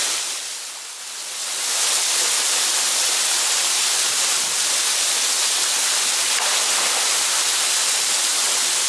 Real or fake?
real